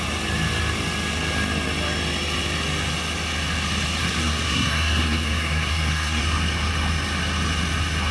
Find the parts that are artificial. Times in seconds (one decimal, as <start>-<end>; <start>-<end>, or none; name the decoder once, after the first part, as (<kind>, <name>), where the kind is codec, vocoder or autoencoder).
4.0-6.2 (codec, SNAC)